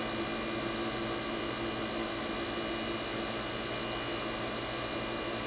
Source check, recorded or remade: recorded